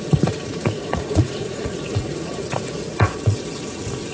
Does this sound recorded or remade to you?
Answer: remade